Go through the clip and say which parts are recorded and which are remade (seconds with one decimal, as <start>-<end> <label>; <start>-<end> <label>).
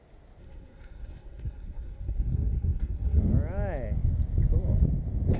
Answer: 0.0-0.4 recorded; 0.4-3.2 remade; 3.2-5.4 recorded